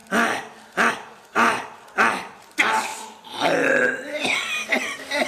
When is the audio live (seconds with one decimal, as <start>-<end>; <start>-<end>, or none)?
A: 0.0-5.3